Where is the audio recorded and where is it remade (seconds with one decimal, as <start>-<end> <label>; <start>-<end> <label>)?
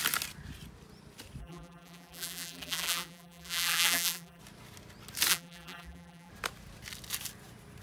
0.0-1.4 recorded; 1.4-4.4 remade; 4.4-5.3 recorded; 5.3-6.3 remade; 6.3-7.8 recorded